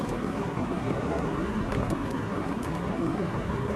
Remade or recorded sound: remade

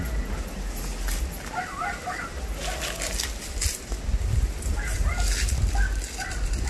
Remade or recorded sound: recorded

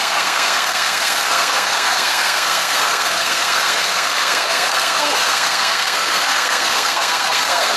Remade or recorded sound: remade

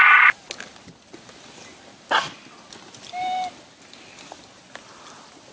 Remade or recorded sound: recorded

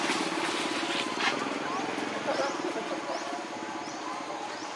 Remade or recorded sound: recorded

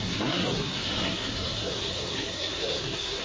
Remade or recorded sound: remade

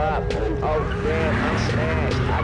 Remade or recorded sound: recorded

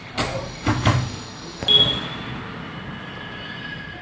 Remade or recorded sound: recorded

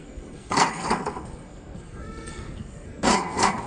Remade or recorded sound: remade